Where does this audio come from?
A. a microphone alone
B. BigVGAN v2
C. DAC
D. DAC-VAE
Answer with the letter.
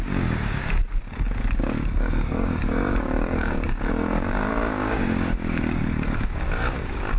C